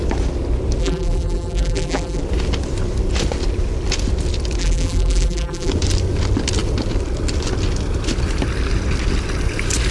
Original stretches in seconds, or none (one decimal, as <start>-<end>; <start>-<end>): 0.0-0.8; 2.2-4.6; 5.7-9.9